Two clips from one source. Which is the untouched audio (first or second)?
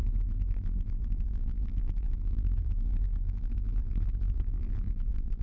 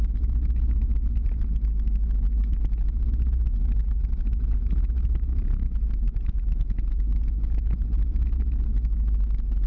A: second